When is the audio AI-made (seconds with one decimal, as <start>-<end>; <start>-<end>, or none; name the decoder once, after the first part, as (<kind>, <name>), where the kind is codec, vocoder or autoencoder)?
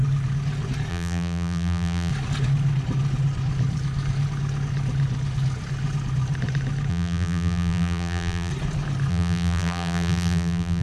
0.9-2.1 (vocoder, BigVGAN v2); 6.9-8.5; 9.1-10.8